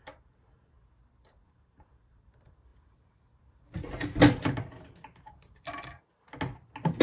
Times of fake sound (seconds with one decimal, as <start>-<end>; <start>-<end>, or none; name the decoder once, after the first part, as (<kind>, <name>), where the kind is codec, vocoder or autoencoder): none